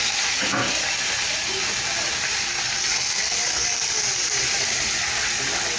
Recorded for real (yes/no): yes